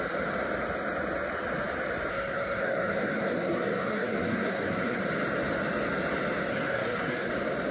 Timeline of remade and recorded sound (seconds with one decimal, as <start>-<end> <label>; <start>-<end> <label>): 0.0-2.1 recorded; 2.1-5.0 remade; 5.0-6.5 recorded; 6.5-7.3 remade; 7.3-7.7 recorded